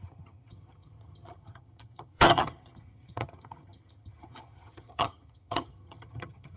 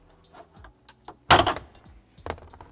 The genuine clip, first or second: second